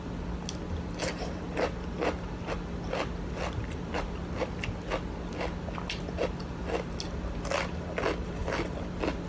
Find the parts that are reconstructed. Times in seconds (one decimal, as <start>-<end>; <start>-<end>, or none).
none